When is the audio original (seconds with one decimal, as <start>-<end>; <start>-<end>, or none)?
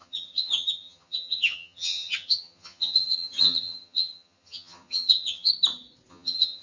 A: 5.5-6.1